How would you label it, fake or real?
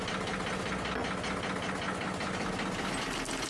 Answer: real